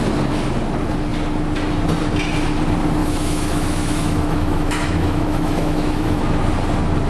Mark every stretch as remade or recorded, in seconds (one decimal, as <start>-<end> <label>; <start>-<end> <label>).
0.0-3.0 recorded; 3.0-6.2 remade; 6.2-7.1 recorded

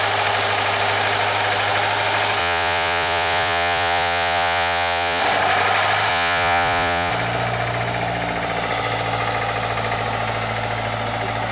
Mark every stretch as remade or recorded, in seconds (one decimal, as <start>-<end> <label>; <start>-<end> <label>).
0.0-2.4 recorded; 2.4-5.2 remade; 5.2-6.1 recorded; 6.1-7.1 remade; 7.1-11.5 recorded

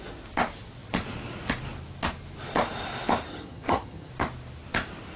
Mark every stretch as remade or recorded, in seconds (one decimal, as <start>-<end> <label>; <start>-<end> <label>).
0.0-3.3 recorded; 3.3-4.1 remade; 4.1-5.2 recorded

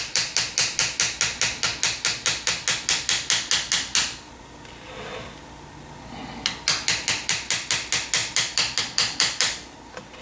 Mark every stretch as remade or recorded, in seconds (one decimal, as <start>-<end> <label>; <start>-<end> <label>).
0.0-10.2 recorded

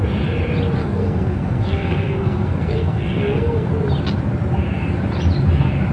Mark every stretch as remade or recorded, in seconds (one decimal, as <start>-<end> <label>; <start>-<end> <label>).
0.0-0.8 recorded; 0.8-3.7 remade; 3.7-5.9 recorded

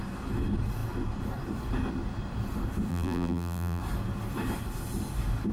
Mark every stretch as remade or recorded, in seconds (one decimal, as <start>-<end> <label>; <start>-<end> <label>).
0.0-2.9 recorded; 2.9-3.8 remade; 3.8-5.5 recorded